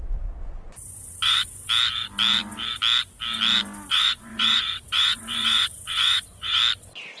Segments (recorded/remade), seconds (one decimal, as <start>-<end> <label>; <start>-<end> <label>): 0.0-0.4 recorded; 0.4-1.7 remade; 1.7-3.9 recorded; 3.9-6.6 remade; 6.6-7.2 recorded